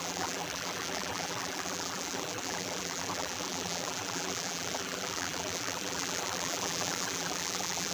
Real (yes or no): no